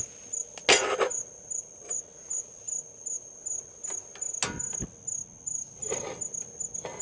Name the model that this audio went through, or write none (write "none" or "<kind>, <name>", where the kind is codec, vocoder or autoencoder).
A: none